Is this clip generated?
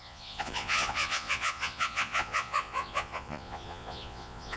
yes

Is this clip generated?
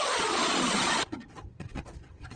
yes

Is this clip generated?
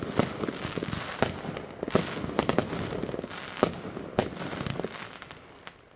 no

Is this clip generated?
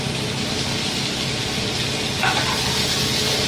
no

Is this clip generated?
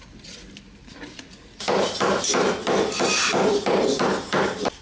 no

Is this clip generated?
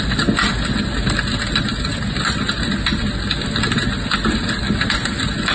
no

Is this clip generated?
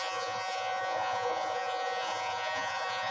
yes